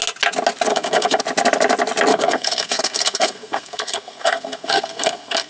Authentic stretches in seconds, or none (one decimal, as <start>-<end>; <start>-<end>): 0.0-0.7; 1.2-2.1

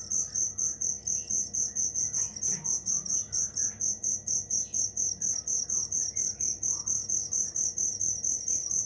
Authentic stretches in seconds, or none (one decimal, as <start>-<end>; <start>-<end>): 0.0-8.9

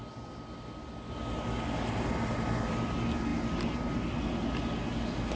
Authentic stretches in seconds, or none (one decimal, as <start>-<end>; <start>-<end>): 0.0-5.4

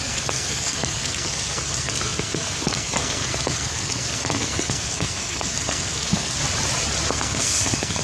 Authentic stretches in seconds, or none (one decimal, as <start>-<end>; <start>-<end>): 6.4-7.1

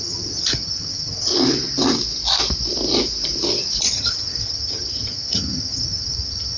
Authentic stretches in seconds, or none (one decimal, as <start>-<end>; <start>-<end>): 1.3-3.8